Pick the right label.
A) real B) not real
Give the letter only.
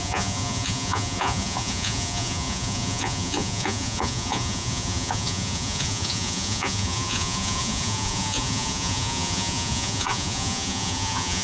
B